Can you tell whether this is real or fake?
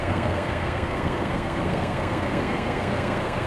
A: fake